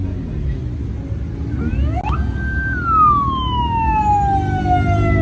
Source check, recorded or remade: recorded